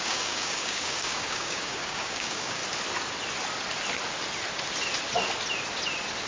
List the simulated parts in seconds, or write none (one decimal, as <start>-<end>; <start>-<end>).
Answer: 0.0-2.6